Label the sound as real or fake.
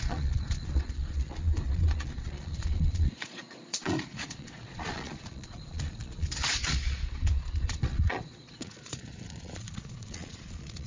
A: fake